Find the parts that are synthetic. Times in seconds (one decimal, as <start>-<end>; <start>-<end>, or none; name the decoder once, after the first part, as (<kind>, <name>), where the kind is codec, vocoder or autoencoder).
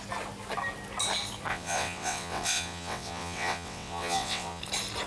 1.5-4.6 (vocoder, WaveNeXt)